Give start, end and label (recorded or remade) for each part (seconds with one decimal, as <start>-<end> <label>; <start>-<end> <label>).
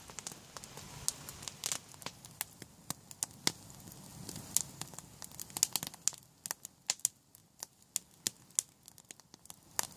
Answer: 0.0-10.0 recorded